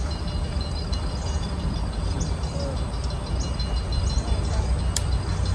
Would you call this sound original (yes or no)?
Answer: yes